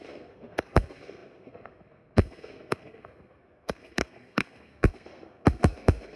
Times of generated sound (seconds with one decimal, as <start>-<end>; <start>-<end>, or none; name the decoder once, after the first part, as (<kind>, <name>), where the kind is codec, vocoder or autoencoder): 0.0-6.2 (codec, SNAC)